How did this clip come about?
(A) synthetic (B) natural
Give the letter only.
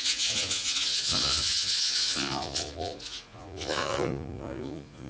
A